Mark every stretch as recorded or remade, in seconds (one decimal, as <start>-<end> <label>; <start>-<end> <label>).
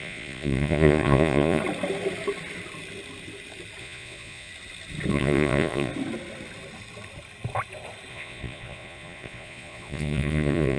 0.0-1.6 remade; 1.6-3.8 recorded; 3.8-4.5 remade; 4.5-5.1 recorded; 5.1-5.9 remade; 5.9-8.1 recorded; 8.1-10.8 remade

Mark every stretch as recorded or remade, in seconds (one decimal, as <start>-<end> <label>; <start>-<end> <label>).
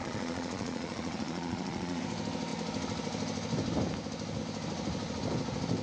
0.0-2.0 remade; 2.0-5.8 recorded